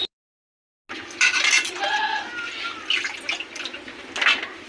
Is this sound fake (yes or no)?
no